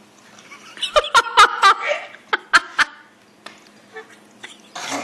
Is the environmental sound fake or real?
real